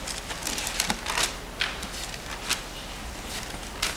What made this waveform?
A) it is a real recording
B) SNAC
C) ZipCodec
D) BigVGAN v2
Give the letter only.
A